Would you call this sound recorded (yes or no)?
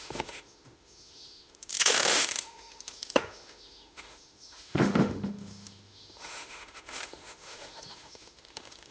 no